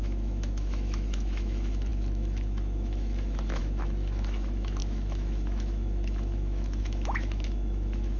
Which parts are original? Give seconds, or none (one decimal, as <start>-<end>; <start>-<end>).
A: none